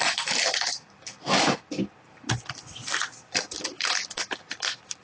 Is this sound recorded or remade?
recorded